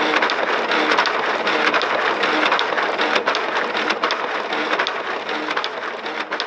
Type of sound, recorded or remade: recorded